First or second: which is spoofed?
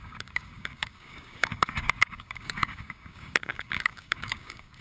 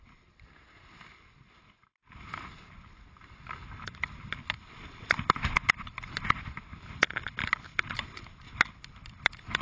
first